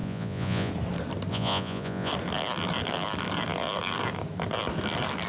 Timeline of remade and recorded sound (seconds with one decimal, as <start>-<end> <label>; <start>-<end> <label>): 0.0-0.7 remade; 0.7-1.3 recorded; 1.3-2.1 remade; 2.1-5.3 recorded